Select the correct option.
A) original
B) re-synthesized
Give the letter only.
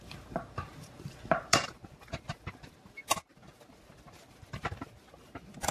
B